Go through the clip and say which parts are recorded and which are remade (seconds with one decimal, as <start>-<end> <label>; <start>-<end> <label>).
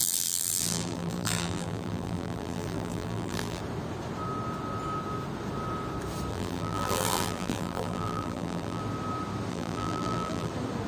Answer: 0.0-3.6 remade; 3.6-6.3 recorded; 6.3-8.8 remade; 8.8-9.5 recorded; 9.5-10.5 remade; 10.5-10.9 recorded